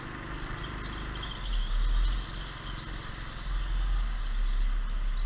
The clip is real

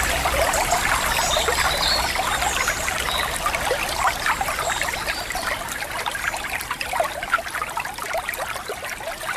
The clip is real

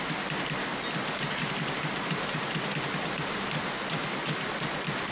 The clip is real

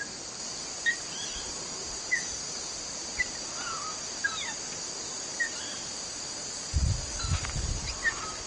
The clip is real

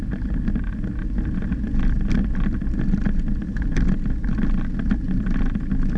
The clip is real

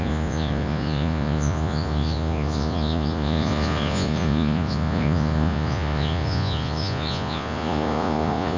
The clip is fake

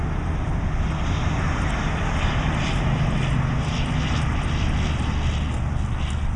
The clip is real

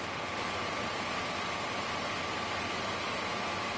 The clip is real